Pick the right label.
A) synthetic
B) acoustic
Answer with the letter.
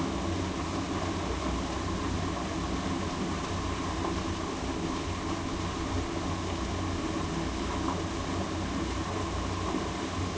B